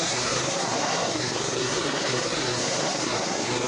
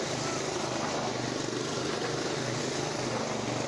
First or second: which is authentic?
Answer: second